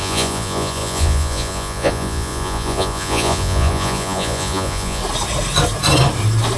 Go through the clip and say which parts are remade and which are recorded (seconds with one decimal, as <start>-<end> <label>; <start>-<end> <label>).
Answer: 0.0-5.0 remade; 5.0-6.6 recorded